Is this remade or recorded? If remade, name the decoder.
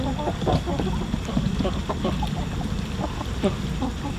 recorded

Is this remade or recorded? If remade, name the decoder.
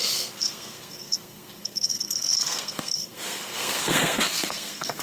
remade, codec, SNAC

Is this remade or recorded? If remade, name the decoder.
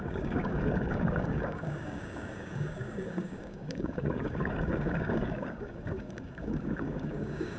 remade, codec, DAC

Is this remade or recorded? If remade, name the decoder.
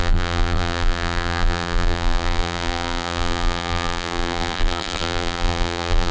remade, vocoder, BigVGAN v2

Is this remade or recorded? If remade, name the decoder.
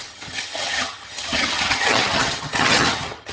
remade, vocoder, HiFi-GAN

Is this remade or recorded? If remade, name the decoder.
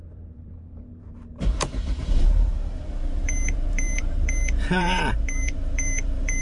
remade, vocoder, BigVGAN v2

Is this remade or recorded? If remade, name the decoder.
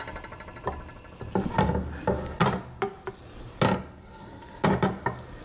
recorded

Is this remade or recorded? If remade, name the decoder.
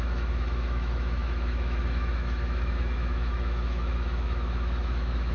remade, autoencoder, DAC-VAE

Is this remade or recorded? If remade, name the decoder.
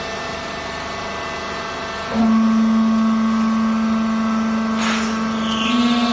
recorded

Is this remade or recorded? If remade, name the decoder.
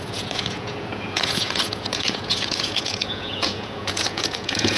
remade, vocoder, Vocos